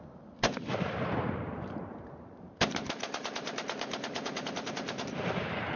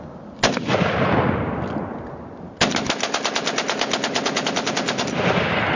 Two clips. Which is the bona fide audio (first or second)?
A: second